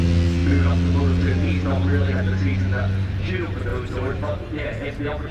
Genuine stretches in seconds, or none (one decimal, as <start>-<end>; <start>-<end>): 0.0-3.7; 4.7-5.3